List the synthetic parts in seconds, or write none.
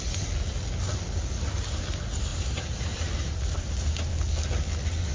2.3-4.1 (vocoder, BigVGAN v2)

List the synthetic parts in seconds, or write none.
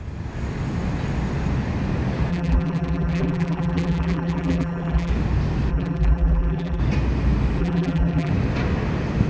2.3-5.1 (vocoder, BigVGAN v2); 5.7-6.8; 7.6-8.3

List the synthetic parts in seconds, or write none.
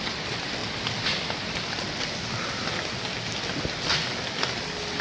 0.6-3.6 (vocoder, BigVGAN v2)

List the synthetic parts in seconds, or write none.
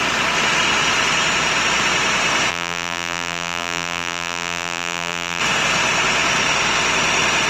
2.5-5.4 (vocoder, BigVGAN v2)